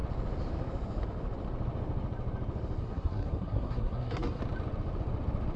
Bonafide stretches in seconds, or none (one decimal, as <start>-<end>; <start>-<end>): 0.0-2.8; 4.4-5.6